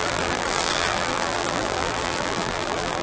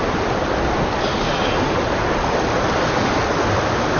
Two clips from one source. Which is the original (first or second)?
second